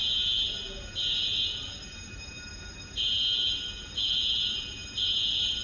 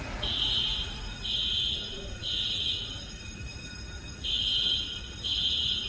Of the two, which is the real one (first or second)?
first